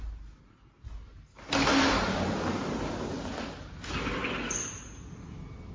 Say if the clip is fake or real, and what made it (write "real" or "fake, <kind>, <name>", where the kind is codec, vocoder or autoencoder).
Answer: real